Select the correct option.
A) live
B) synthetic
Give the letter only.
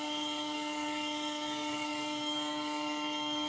B